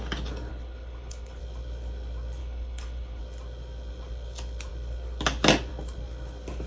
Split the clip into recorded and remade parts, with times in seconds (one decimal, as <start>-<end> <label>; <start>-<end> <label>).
0.0-0.5 recorded; 0.5-1.4 remade; 1.4-2.4 recorded; 2.4-3.2 remade; 3.2-6.7 recorded